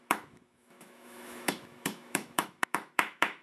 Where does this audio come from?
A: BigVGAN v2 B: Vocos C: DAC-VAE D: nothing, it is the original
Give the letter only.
C